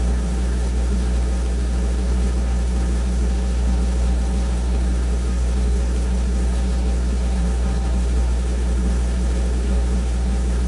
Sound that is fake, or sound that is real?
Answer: fake